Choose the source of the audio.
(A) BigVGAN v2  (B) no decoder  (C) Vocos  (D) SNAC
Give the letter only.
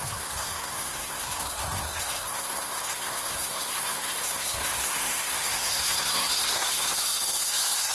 D